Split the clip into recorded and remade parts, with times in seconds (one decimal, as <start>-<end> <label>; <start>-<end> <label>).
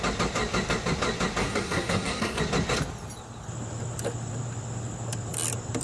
0.0-1.4 recorded; 1.4-2.4 remade; 2.4-5.8 recorded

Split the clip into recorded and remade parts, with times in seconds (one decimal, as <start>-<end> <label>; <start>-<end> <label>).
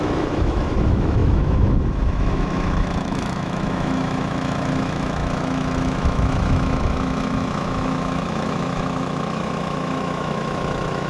0.0-11.1 remade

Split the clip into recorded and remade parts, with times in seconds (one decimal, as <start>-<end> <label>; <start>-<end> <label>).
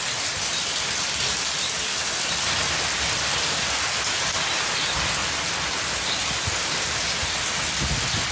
0.0-8.3 recorded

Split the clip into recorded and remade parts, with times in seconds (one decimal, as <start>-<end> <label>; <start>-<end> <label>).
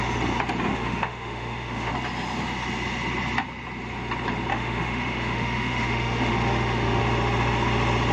0.0-0.7 recorded; 0.7-1.9 remade; 1.9-4.5 recorded; 4.5-7.0 remade; 7.0-8.1 recorded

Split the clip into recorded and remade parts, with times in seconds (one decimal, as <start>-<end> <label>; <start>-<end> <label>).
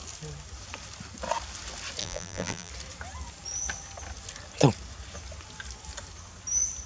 0.0-2.0 recorded; 2.0-2.7 remade; 2.7-6.9 recorded